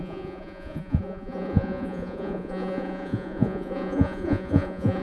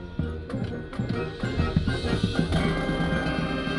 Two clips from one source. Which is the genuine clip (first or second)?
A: second